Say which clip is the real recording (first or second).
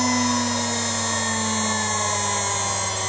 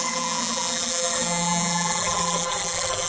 first